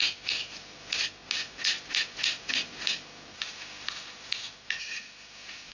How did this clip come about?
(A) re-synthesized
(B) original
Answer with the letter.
B